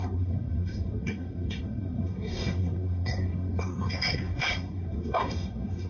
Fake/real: fake